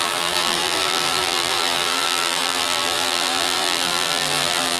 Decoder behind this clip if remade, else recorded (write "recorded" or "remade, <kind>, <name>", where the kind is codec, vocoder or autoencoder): remade, vocoder, BigVGAN v2